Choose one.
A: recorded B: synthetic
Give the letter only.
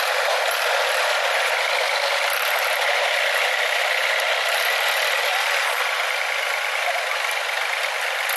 A